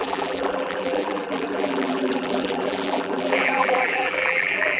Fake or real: fake